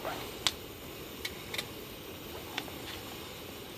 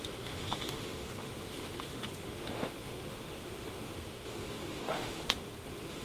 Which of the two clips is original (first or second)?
first